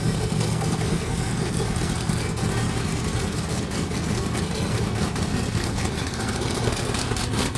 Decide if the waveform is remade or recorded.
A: remade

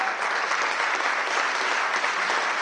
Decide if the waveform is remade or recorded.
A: recorded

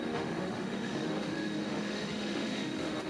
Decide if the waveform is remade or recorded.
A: remade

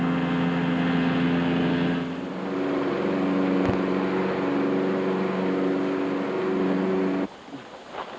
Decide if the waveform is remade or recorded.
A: recorded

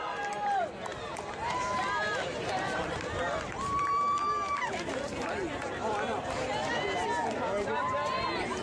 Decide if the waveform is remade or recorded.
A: remade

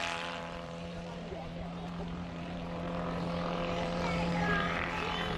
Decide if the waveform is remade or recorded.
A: remade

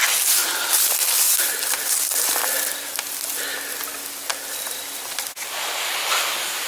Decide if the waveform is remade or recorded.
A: recorded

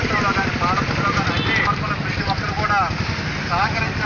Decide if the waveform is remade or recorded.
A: recorded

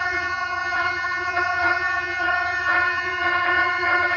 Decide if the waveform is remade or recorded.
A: remade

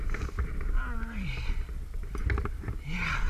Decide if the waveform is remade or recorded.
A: recorded